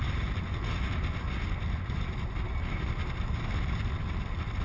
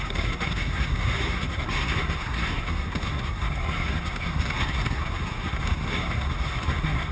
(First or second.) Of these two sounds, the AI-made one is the second